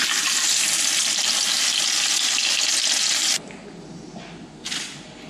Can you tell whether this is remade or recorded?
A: recorded